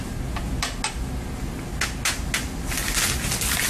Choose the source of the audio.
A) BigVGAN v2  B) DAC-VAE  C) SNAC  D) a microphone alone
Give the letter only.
D